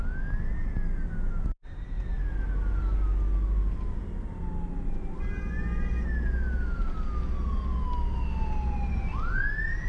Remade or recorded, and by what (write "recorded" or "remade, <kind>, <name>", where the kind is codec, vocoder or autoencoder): recorded